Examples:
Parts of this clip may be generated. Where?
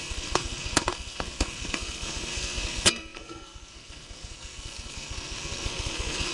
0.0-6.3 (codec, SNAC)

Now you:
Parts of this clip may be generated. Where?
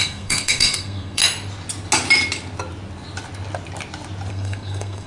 0.0-1.2 (codec, SNAC); 4.3-5.1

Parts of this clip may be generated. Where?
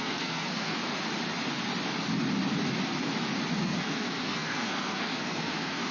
0.0-0.8 (codec, SNAC); 3.5-5.9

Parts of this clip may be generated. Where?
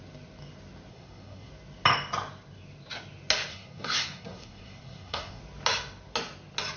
0.9-1.5 (codec, SNAC); 3.5-5.4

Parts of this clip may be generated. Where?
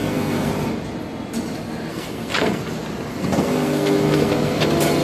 0.0-0.5 (codec, SNAC); 1.9-2.6; 3.1-4.6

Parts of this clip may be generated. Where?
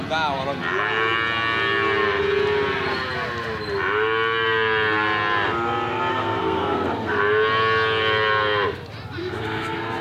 6.1-7.2 (codec, SNAC); 9.2-10.0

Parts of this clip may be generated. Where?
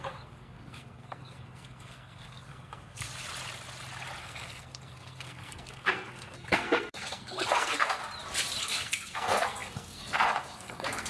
0.0-3.1 (codec, SNAC); 4.2-8.0; 8.6-11.1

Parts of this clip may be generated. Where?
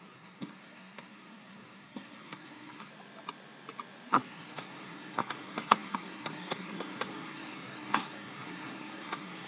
0.0-2.9 (codec, SNAC); 4.1-9.5